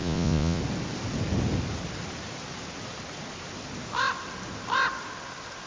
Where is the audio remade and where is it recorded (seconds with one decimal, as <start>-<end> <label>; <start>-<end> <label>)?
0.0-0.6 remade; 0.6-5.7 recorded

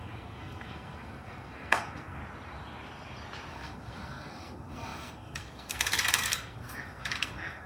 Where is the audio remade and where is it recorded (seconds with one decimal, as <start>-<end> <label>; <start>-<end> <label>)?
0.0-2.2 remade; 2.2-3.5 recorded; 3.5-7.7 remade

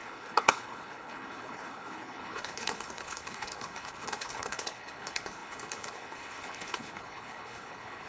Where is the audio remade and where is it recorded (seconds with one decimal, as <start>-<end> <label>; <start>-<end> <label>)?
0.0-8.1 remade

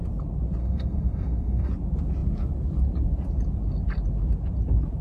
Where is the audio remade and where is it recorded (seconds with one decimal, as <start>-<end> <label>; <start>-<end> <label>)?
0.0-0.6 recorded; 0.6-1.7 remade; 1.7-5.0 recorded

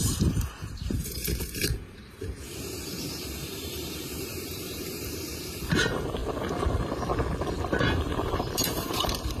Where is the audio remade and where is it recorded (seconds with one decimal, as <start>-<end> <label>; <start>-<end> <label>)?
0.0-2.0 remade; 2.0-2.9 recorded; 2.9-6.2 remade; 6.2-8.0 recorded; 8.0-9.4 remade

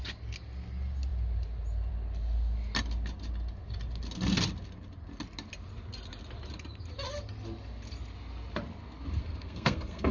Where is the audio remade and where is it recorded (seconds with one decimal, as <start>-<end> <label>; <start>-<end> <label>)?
0.0-9.2 recorded; 9.2-10.1 remade